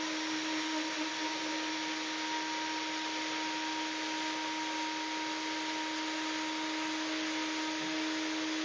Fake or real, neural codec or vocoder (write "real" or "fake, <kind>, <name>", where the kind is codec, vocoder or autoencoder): real